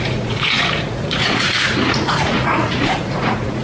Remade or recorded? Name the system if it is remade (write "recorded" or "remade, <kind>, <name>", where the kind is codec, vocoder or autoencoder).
remade, vocoder, Vocos